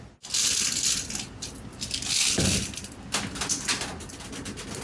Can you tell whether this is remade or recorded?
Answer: recorded